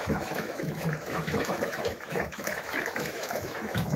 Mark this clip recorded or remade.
remade